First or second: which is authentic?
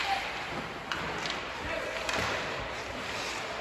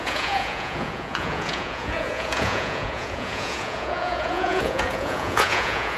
first